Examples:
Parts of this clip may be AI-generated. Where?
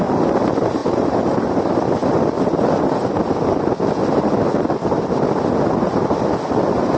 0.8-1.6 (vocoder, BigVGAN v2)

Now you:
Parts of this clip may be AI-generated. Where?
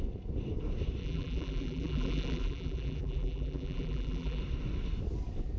1.0-4.4 (vocoder, BigVGAN v2)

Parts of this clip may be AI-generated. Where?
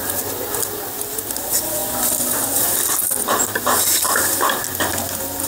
none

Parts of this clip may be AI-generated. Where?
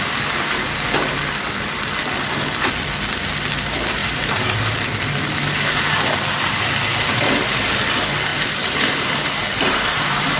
4.0-4.7 (vocoder, BigVGAN v2); 8.3-10.4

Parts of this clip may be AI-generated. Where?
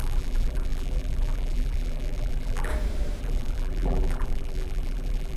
0.0-2.7 (vocoder, BigVGAN v2); 3.2-5.4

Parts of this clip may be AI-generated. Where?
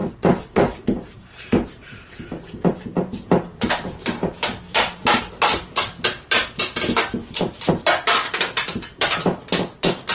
0.0-5.2 (vocoder, BigVGAN v2); 7.2-7.7; 8.6-9.2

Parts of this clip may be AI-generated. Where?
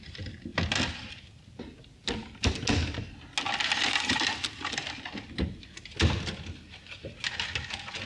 none